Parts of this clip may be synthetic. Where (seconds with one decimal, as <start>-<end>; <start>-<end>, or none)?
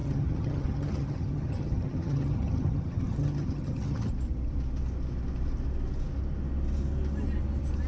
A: 0.0-4.1